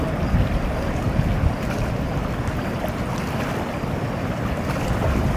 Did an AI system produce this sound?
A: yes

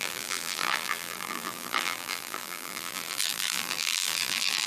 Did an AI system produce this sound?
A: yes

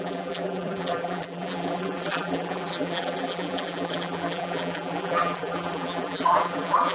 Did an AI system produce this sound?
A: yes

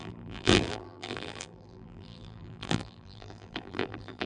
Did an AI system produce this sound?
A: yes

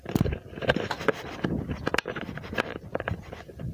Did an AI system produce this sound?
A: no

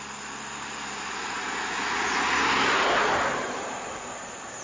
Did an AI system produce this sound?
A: no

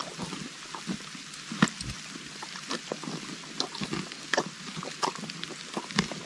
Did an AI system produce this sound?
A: no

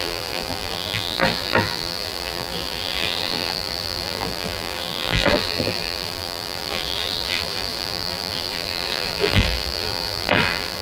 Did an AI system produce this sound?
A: yes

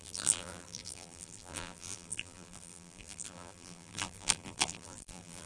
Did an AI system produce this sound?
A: yes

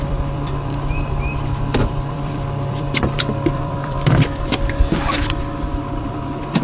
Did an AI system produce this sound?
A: yes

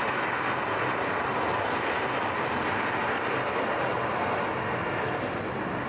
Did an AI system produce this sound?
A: no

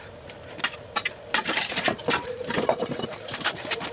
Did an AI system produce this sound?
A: yes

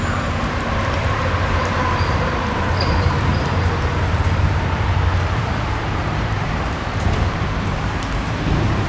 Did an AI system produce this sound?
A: yes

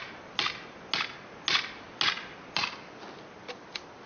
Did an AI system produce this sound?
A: no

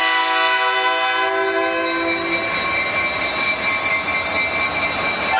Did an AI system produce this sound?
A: no